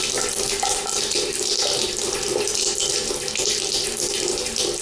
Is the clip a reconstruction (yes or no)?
no